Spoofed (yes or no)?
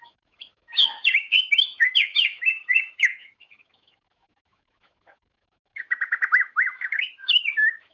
yes